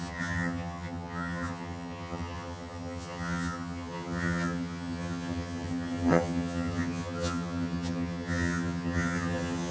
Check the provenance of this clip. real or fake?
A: fake